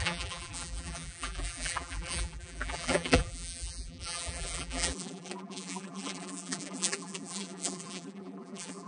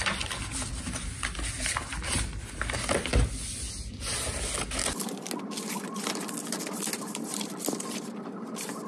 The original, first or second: second